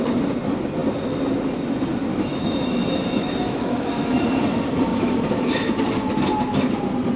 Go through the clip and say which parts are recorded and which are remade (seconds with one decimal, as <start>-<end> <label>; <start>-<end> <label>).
0.0-2.1 recorded; 2.1-4.2 remade; 4.2-4.9 recorded; 4.9-5.7 remade; 5.7-7.2 recorded